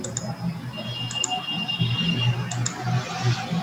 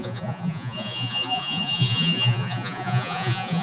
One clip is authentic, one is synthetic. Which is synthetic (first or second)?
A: second